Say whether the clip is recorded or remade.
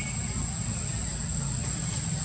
recorded